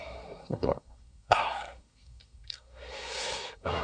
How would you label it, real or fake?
fake